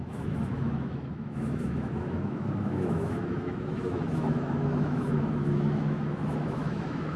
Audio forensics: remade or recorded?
remade